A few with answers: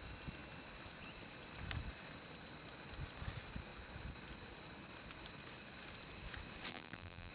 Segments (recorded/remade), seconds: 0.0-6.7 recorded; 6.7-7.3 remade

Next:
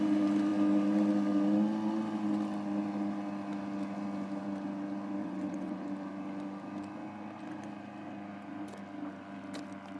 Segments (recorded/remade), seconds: 0.0-5.2 recorded; 5.2-5.8 remade; 5.8-10.0 recorded

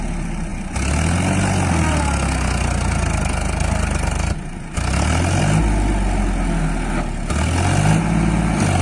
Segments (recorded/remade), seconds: 0.0-8.8 recorded

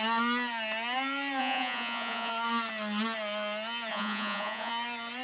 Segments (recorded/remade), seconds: 0.0-1.4 recorded; 1.4-2.3 remade; 2.3-3.9 recorded; 3.9-4.7 remade; 4.7-5.2 recorded